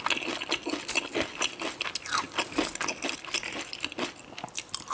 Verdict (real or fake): real